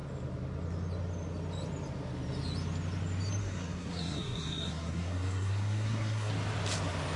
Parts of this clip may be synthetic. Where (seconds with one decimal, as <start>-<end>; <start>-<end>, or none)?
3.4-6.3